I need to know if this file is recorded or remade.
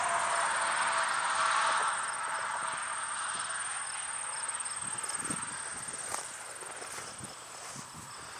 recorded